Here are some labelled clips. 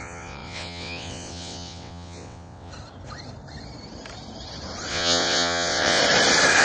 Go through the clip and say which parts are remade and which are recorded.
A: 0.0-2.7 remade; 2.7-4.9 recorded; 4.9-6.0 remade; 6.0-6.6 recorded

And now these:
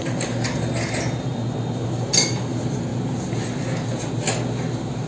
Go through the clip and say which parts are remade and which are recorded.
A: 0.0-5.1 recorded

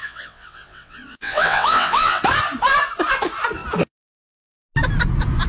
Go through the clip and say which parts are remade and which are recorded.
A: 0.0-2.2 remade; 2.2-5.5 recorded

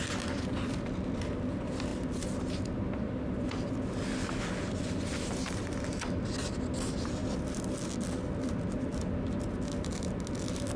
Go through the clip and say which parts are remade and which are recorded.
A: 0.0-10.8 recorded

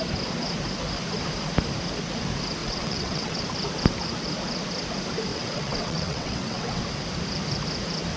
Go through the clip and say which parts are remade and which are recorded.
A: 0.0-2.6 recorded; 2.6-3.4 remade; 3.4-5.3 recorded; 5.3-6.8 remade; 6.8-8.2 recorded

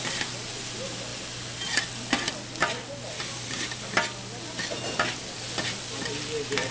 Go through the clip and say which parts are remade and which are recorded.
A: 0.0-6.7 recorded

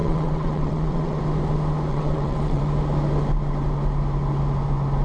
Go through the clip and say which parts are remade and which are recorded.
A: 0.0-1.2 remade; 1.2-1.9 recorded; 1.9-2.6 remade; 2.6-5.0 recorded

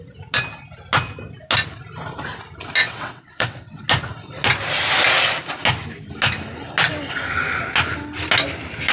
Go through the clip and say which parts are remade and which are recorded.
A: 0.0-2.8 recorded; 2.8-3.8 remade; 3.8-8.9 recorded